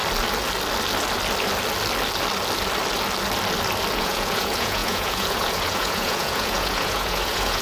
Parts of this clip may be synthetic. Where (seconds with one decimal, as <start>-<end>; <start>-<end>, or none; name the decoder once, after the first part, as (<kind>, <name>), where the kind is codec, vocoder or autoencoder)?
3.9-7.6 (vocoder, Vocos)